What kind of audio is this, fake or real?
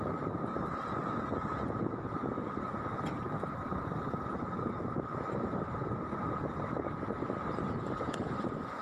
real